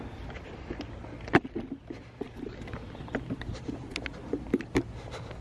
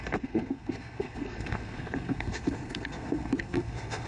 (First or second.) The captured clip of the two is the first